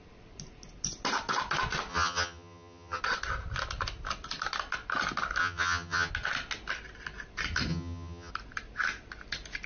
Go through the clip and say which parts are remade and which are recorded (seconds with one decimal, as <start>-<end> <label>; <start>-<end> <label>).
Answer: 0.0-1.9 recorded; 1.9-3.0 remade; 3.0-5.4 recorded; 5.4-6.1 remade; 6.1-7.7 recorded; 7.7-8.3 remade; 8.3-9.7 recorded

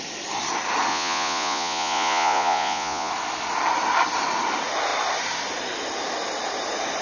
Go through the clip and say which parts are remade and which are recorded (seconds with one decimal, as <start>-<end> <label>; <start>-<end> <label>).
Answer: 0.0-0.9 recorded; 0.9-3.1 remade; 3.1-7.0 recorded

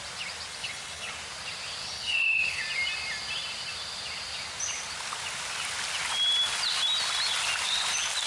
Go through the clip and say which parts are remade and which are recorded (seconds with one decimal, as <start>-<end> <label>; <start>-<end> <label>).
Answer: 0.0-0.5 recorded; 0.5-1.1 remade; 1.1-1.8 recorded; 1.8-2.6 remade; 2.6-8.3 recorded

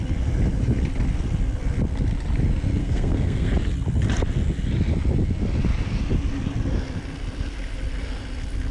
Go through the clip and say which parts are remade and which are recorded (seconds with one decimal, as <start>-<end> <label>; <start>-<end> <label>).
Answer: 0.0-2.8 recorded; 2.8-3.5 remade; 3.5-8.7 recorded